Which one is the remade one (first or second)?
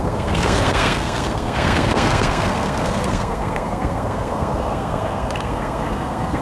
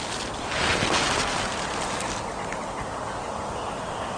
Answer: first